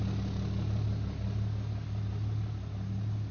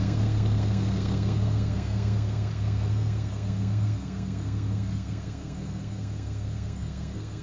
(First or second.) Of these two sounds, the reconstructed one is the second